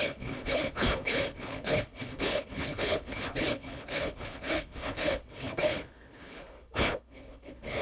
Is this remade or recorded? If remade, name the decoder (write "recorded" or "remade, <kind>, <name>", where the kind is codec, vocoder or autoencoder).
remade, codec, HILCodec